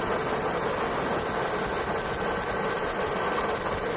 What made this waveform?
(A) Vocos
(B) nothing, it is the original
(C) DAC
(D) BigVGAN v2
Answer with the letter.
B